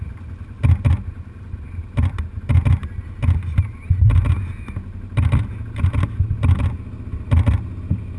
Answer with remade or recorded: recorded